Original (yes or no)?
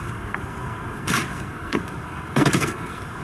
no